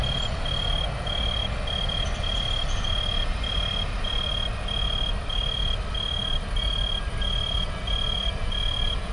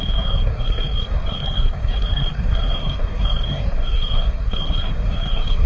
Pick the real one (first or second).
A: first